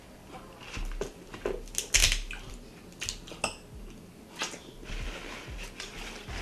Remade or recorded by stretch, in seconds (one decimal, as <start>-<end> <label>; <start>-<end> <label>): 0.0-6.4 recorded